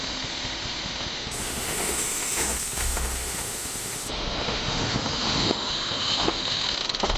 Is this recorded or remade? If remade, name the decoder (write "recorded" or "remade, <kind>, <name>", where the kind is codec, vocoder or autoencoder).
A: remade, autoencoder, DAC-VAE